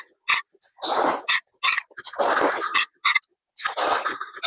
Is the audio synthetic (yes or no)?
no